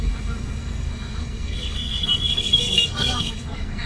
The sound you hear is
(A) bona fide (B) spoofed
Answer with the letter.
B